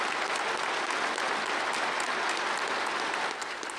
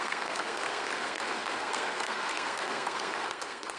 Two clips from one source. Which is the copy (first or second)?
second